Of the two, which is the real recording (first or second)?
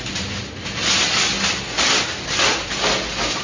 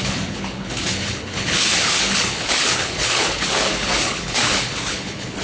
first